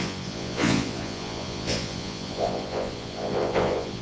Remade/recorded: remade